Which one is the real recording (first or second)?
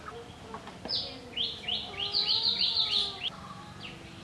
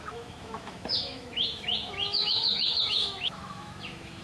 first